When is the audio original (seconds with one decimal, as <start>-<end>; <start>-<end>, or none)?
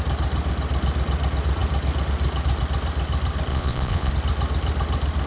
0.0-3.5; 4.1-5.3